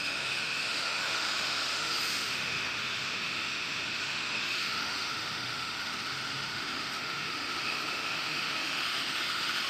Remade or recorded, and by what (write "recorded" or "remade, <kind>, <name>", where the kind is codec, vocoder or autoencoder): remade, autoencoder, DAC-VAE